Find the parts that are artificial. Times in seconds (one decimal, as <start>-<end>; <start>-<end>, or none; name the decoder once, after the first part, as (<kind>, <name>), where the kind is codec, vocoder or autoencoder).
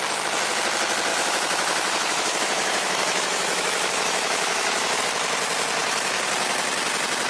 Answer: 1.1-5.0 (autoencoder, DAC-VAE)